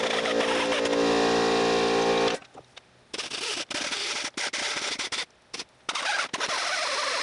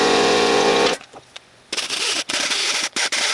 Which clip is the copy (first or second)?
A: second